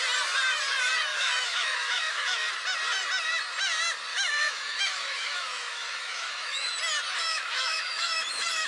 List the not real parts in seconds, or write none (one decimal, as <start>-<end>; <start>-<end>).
1.1-2.5; 4.1-6.7; 7.2-8.7